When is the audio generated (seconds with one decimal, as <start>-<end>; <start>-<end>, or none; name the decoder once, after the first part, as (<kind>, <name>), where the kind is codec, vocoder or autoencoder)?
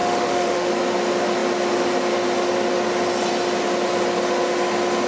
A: 0.0-0.7 (autoencoder, DAC-VAE)